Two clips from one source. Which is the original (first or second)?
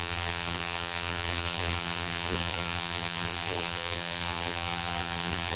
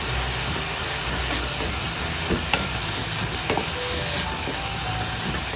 second